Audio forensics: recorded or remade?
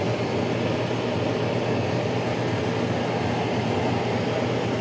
recorded